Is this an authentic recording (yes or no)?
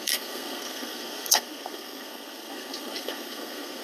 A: no